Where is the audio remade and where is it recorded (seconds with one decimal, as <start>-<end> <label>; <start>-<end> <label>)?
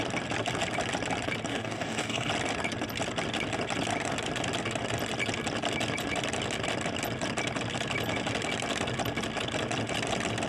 0.0-1.5 recorded; 1.5-2.3 remade; 2.3-10.5 recorded